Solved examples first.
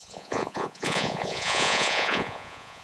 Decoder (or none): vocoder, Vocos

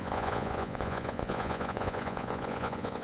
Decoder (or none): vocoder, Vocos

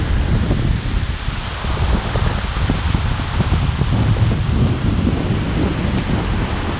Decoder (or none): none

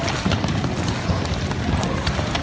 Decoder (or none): none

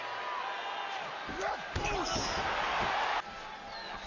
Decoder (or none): none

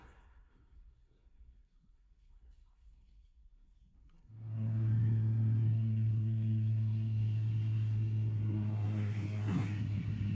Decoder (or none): codec, SNAC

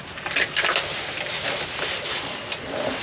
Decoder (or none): none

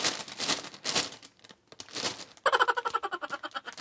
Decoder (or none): none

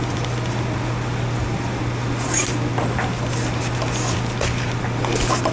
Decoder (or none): none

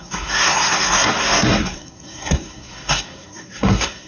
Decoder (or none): codec, SNAC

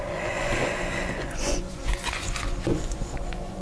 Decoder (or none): vocoder, Vocos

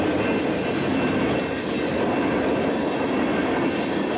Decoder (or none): none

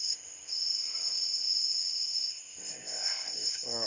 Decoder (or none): codec, ZipCodec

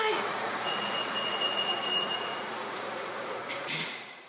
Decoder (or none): vocoder, Vocos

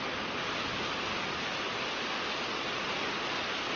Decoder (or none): none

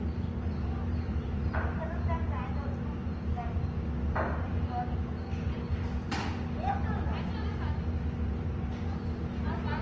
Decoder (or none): none